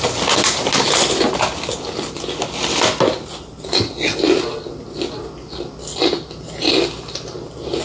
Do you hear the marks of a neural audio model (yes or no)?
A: no